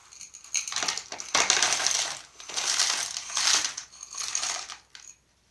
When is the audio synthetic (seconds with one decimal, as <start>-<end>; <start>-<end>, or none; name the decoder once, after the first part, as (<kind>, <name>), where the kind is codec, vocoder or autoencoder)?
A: none